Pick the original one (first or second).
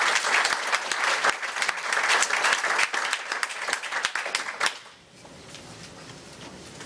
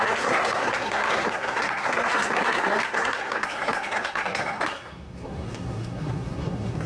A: first